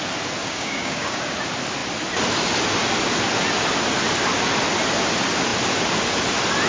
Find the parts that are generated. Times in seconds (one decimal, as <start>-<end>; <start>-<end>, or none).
0.4-1.2